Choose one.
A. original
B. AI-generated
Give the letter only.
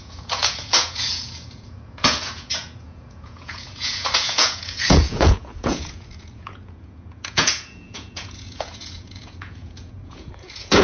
B